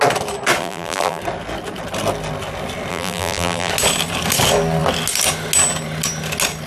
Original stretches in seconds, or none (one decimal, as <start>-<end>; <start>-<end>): 0.0-0.6; 1.2-2.9; 3.7-6.7